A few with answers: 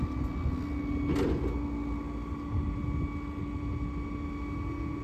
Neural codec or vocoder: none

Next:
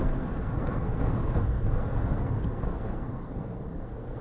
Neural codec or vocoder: codec, SNAC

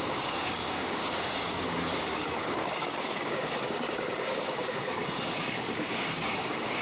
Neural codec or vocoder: codec, DAC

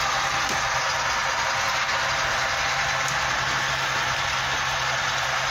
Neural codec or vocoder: none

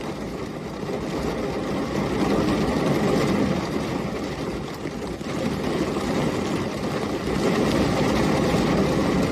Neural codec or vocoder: none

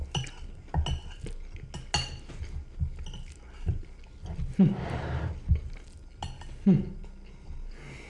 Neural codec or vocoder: none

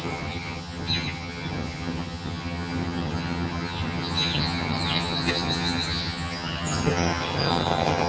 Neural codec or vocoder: vocoder, HiFi-GAN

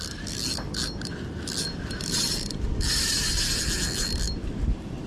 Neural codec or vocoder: vocoder, BigVGAN v2